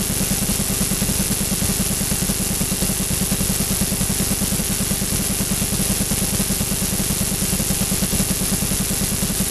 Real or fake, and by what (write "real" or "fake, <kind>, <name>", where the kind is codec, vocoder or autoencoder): real